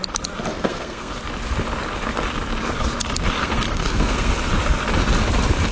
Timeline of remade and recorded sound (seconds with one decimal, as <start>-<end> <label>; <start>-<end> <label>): 0.0-0.5 recorded; 0.5-1.1 remade; 1.1-3.4 recorded; 3.4-4.3 remade; 4.3-5.7 recorded